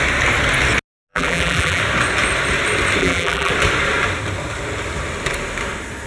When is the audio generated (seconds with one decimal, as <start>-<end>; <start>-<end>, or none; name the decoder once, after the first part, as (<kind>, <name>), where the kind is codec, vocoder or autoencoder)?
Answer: 1.1-1.8 (vocoder, BigVGAN v2); 3.0-3.5